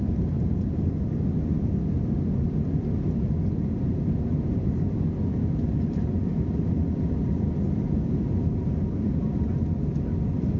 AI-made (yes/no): no